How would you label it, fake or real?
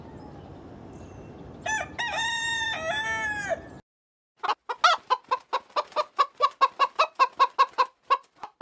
real